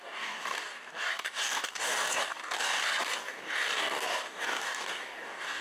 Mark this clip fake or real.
fake